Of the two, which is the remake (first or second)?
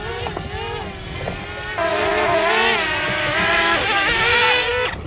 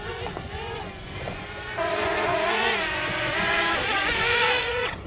second